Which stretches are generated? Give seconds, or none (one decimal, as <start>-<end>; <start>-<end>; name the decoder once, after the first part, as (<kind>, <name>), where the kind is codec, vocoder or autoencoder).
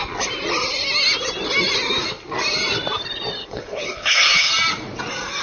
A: 3.4-4.5 (codec, HILCodec)